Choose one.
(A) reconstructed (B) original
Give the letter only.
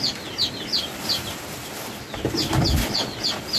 B